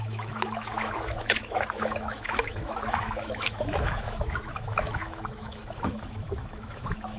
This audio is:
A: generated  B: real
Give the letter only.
A